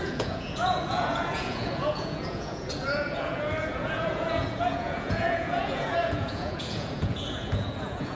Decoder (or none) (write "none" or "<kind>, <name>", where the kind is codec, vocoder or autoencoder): vocoder, Vocos